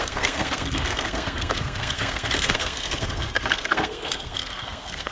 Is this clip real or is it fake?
fake